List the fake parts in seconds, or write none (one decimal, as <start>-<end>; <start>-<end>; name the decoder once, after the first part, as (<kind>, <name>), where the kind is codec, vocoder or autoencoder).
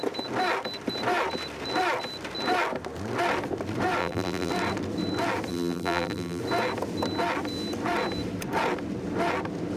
4.0-4.5 (vocoder, BigVGAN v2); 5.5-6.4